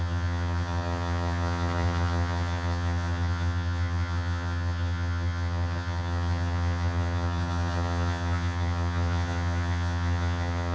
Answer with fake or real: fake